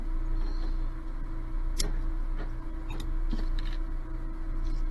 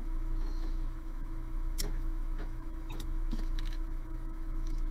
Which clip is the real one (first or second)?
first